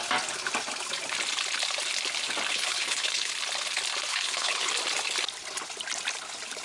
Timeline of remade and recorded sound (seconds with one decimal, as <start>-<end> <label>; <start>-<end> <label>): 0.0-2.5 recorded; 2.5-3.3 remade; 3.3-4.1 recorded; 4.1-4.7 remade; 4.7-6.6 recorded